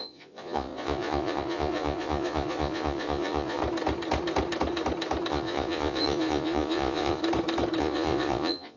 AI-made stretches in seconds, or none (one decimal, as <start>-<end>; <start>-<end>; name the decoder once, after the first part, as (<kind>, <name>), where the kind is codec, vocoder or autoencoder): 0.0-3.6 (vocoder, Vocos); 5.3-7.2; 7.8-8.8